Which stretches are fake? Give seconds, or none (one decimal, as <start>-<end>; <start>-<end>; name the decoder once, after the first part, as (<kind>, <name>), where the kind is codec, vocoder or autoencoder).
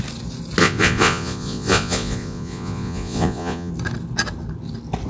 0.6-3.7 (vocoder, Vocos)